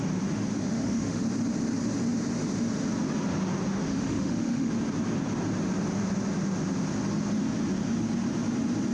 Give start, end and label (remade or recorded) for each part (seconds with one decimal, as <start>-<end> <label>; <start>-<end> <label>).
0.0-0.6 recorded; 0.6-1.2 remade; 1.2-3.9 recorded; 3.9-4.7 remade; 4.7-8.9 recorded